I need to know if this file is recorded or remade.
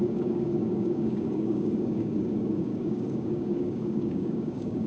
remade